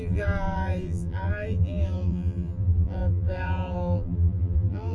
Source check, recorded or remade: remade